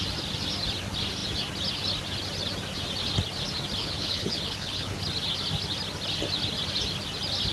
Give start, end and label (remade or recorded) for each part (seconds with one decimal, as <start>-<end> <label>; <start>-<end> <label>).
0.0-3.8 recorded; 3.8-5.0 remade; 5.0-7.5 recorded